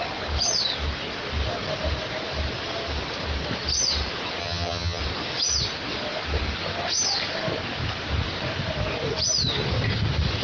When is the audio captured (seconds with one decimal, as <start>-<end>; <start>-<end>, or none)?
0.0-4.4; 5.0-10.4